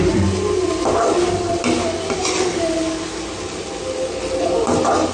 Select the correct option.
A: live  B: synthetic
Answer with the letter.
A